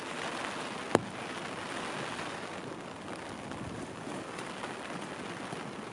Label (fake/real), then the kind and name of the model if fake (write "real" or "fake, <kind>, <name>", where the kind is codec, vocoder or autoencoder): real